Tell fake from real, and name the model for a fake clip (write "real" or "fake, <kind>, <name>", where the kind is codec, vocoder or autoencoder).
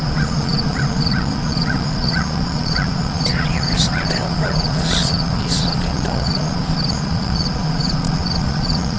fake, vocoder, Vocos